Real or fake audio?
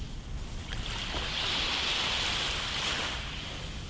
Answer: real